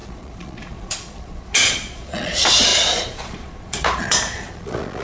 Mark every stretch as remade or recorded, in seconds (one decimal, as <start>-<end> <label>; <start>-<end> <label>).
0.0-5.0 remade